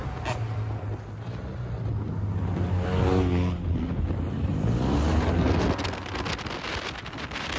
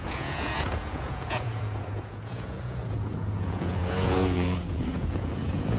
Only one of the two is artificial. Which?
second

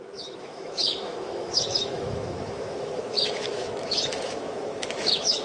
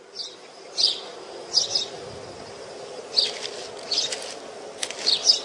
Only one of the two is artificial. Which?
first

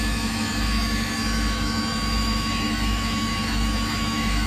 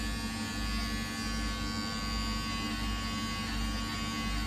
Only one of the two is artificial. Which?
first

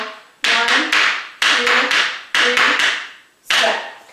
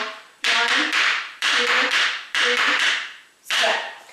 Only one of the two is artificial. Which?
second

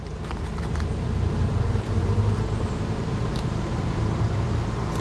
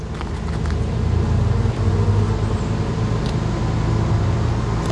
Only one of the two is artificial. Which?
first